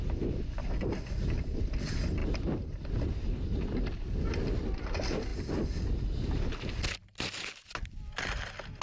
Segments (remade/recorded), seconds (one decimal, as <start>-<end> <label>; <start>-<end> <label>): 0.0-8.8 recorded